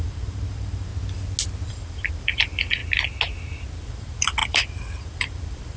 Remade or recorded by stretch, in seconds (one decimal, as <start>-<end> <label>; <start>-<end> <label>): 0.0-0.9 remade; 0.9-1.7 recorded; 1.7-2.8 remade; 2.8-3.8 recorded; 3.8-5.8 remade